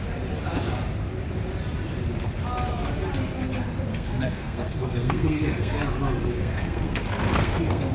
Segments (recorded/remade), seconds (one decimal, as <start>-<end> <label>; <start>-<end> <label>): 0.0-3.9 recorded; 3.9-5.7 remade; 5.7-6.4 recorded; 6.4-7.9 remade